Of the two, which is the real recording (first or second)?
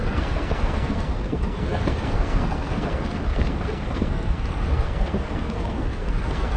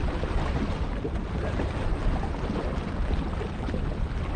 second